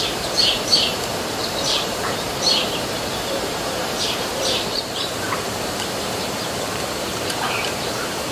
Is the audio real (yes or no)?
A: no